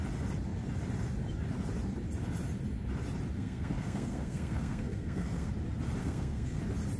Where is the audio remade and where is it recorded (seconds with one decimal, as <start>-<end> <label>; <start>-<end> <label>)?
0.0-3.3 recorded; 3.3-5.5 remade; 5.5-6.0 recorded; 6.0-6.6 remade; 6.6-7.0 recorded